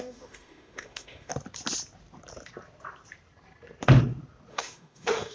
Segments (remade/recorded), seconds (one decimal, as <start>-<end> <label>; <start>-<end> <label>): 0.0-1.3 remade; 1.3-4.5 recorded; 4.5-5.3 remade

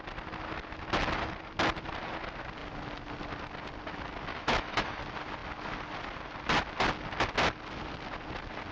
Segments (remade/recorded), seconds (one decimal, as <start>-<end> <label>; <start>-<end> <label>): 0.0-4.3 recorded; 4.3-5.0 remade; 5.0-8.7 recorded

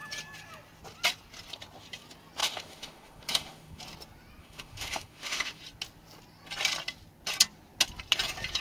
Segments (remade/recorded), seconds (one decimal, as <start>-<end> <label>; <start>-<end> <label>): 0.0-2.4 recorded; 2.4-3.8 remade; 3.8-4.4 recorded; 4.4-5.6 remade; 5.6-8.6 recorded

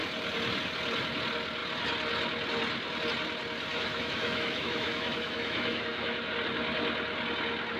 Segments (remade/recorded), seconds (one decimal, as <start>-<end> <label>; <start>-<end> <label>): 0.0-3.7 recorded; 3.7-6.3 remade; 6.3-7.8 recorded

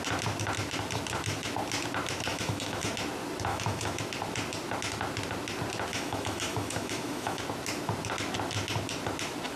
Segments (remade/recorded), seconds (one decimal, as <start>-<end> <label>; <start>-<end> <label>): 0.0-2.3 recorded; 2.3-2.9 remade; 2.9-3.5 recorded; 3.5-4.0 remade; 4.0-5.9 recorded; 5.9-7.4 remade; 7.4-9.6 recorded

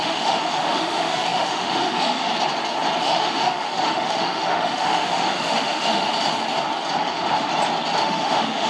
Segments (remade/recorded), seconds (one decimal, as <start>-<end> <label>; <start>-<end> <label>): 0.0-2.3 remade; 2.3-3.0 recorded; 3.0-6.1 remade; 6.1-7.0 recorded; 7.0-7.5 remade; 7.5-8.0 recorded; 8.0-8.7 remade

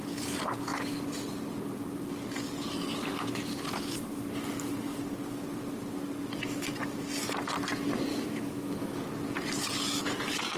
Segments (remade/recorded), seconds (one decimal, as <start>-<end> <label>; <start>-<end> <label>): 0.0-8.1 recorded; 8.1-9.0 remade; 9.0-10.6 recorded

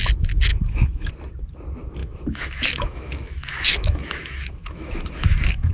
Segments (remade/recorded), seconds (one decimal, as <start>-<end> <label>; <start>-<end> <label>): 0.0-0.5 recorded; 0.5-1.1 remade; 1.1-2.0 recorded; 2.0-5.7 remade